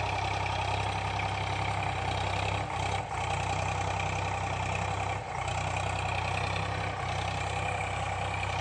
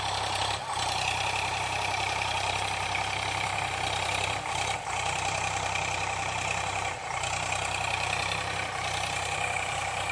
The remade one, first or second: second